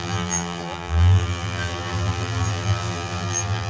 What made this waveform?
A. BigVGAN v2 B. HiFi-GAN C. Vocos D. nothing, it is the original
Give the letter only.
A